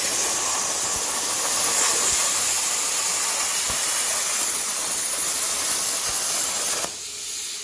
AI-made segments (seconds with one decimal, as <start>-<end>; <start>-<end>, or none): none

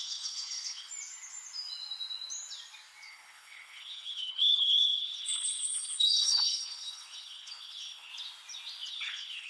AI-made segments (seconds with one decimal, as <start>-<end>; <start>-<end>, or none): 0.0-0.9; 3.1-8.1; 8.9-9.5